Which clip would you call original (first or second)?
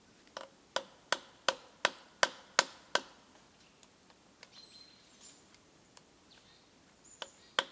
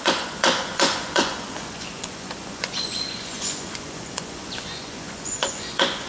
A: first